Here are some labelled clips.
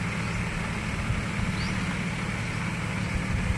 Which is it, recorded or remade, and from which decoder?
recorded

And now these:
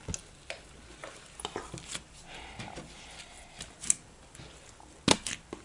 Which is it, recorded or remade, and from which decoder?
recorded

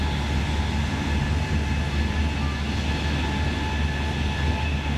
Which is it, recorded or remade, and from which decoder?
recorded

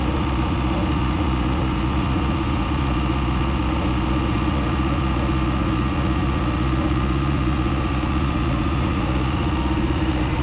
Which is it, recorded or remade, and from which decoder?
remade, vocoder, Vocos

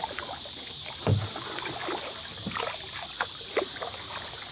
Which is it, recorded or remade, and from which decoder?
recorded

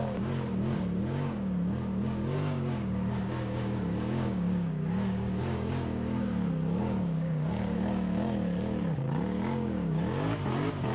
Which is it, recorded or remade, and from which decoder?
remade, codec, DAC